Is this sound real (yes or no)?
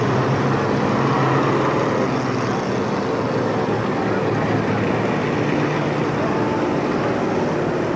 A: yes